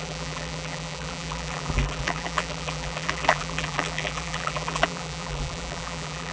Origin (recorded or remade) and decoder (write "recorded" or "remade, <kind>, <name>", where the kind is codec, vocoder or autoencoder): remade, vocoder, BigVGAN v2